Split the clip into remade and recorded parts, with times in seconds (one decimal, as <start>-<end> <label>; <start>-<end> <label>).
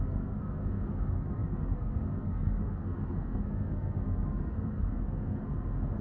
0.0-5.4 remade; 5.4-6.0 recorded